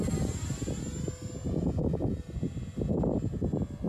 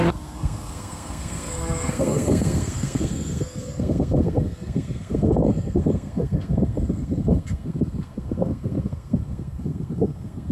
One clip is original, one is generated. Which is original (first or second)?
first